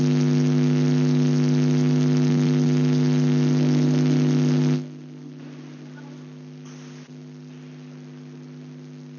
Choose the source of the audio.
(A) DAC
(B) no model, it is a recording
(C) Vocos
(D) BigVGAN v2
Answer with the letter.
B